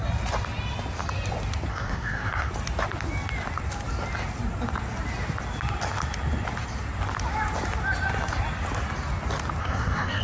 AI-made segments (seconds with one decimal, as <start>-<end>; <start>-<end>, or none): 1.7-2.5; 9.6-10.2